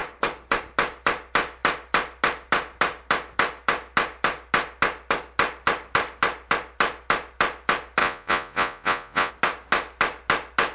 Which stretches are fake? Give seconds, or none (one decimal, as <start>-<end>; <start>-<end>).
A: 8.0-9.3